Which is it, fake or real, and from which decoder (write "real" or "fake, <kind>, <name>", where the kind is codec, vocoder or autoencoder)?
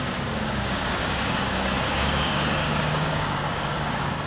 fake, codec, DAC